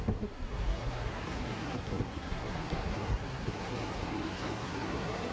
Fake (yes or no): yes